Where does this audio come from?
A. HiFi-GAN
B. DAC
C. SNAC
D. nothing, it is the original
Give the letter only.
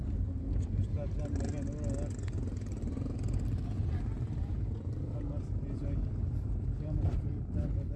D